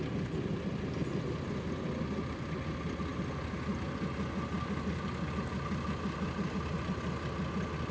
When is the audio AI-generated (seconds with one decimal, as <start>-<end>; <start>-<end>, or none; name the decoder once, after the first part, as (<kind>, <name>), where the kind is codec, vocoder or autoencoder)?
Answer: none